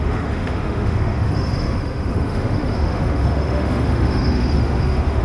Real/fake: fake